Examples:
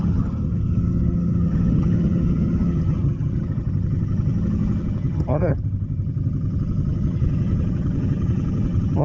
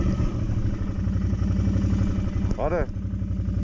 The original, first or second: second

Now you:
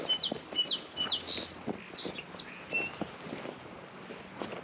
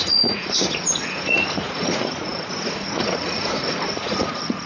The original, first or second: first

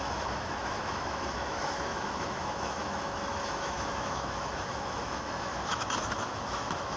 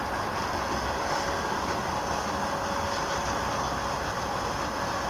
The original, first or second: second